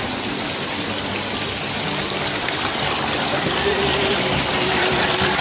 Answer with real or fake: real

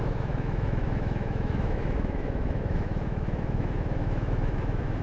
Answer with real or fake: fake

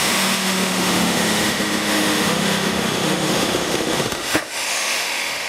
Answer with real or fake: fake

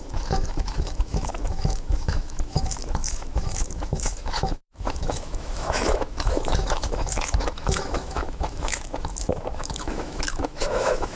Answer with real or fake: fake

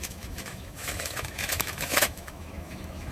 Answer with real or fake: fake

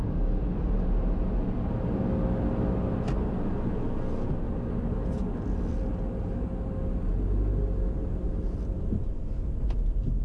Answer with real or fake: real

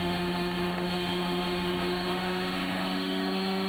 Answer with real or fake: fake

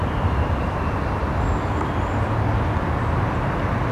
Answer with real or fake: real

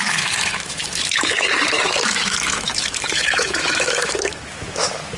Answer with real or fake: fake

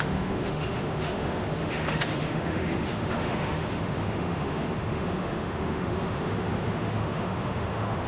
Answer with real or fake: fake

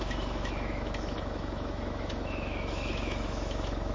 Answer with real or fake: fake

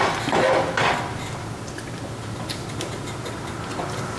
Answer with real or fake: real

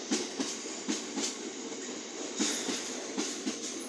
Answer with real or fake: real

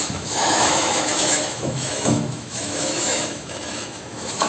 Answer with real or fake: fake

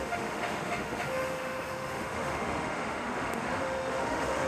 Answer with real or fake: fake